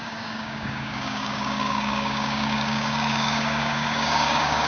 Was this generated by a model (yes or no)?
yes